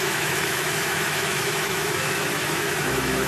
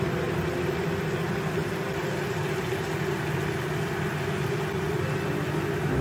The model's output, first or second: first